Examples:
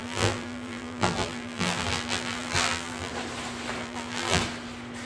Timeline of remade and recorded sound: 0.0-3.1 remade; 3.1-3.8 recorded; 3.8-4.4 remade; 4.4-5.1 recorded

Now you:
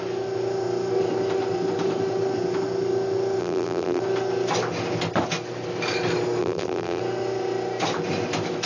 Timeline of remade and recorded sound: 0.0-3.4 recorded; 3.4-4.0 remade; 4.0-6.4 recorded; 6.4-7.0 remade; 7.0-8.7 recorded